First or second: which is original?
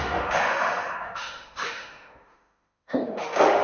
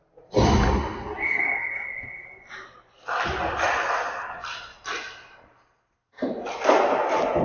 second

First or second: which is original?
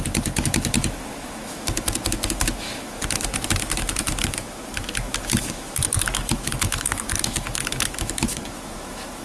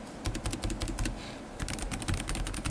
second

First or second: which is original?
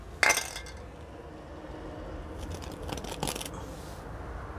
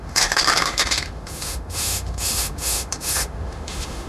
first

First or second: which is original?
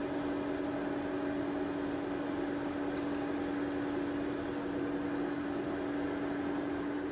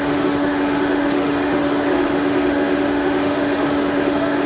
first